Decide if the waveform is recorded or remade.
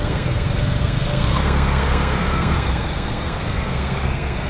remade